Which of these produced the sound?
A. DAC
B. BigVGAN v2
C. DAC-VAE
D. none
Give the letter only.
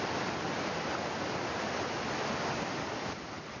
D